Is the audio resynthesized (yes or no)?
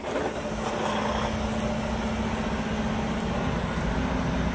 no